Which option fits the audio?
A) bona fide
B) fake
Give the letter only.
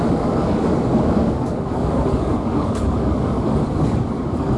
B